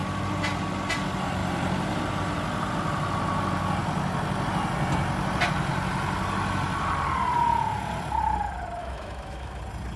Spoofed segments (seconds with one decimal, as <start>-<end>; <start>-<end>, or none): 8.8-9.6